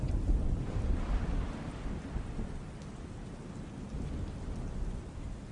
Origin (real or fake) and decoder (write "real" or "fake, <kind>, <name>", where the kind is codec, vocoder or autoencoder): real